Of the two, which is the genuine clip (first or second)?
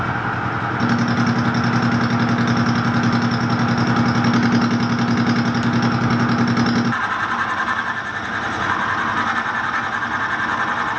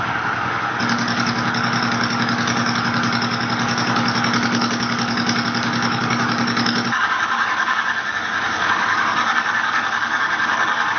first